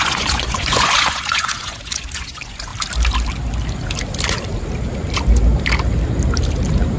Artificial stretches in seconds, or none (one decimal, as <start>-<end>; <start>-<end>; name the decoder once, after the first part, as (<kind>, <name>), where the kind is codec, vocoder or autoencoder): 0.0-2.7 (vocoder, Vocos)